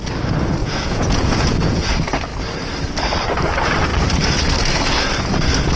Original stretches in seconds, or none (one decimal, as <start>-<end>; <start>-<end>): 0.0-0.6; 1.9-5.8